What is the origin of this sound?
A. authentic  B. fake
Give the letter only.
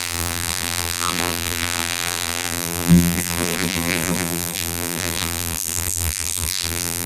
B